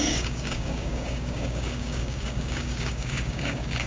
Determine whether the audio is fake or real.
fake